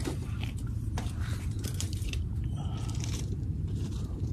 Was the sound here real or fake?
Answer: fake